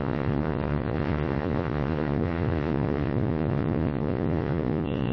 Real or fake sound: fake